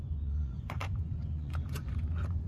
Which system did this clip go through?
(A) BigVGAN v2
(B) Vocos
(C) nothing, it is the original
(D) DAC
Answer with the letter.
B